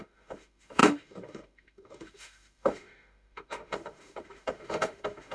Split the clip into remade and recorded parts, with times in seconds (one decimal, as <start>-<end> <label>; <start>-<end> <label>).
0.0-5.3 remade